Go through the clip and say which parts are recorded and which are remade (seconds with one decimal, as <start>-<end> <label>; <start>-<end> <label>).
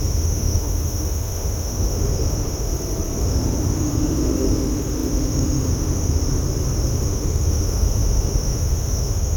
0.0-2.7 remade; 2.7-3.2 recorded; 3.2-6.2 remade; 6.2-6.9 recorded; 6.9-9.4 remade